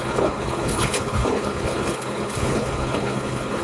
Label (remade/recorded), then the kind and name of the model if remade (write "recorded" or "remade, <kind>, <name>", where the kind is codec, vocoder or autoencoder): remade, codec, HILCodec